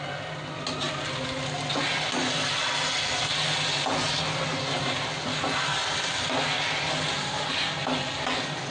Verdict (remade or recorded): recorded